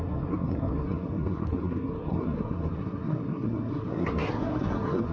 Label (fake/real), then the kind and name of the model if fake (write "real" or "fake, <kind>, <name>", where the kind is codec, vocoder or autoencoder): fake, codec, SNAC